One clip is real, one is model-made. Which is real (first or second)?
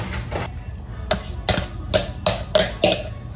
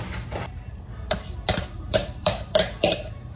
first